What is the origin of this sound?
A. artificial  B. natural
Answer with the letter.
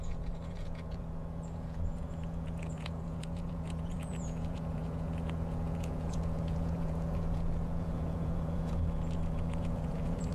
A